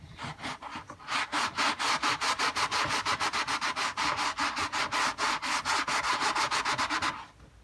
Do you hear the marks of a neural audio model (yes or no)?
no